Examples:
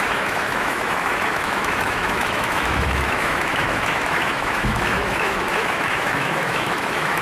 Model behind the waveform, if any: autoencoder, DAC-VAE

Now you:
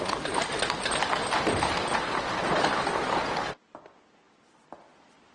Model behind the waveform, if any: none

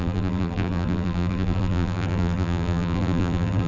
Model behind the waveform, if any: vocoder, BigVGAN v2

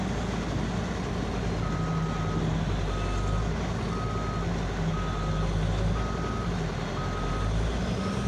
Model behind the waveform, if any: none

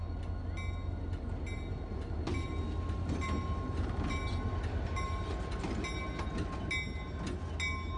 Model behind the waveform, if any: none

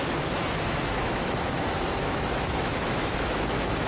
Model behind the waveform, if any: autoencoder, DAC-VAE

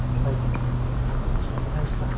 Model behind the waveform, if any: none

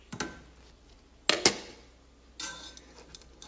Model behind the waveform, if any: none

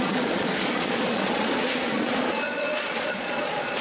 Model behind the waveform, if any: vocoder, Vocos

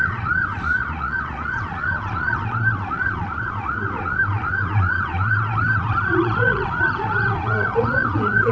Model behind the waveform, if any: vocoder, Vocos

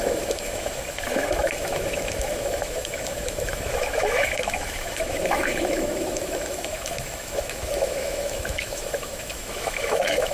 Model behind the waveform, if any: autoencoder, DAC-VAE